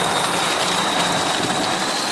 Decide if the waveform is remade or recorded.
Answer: recorded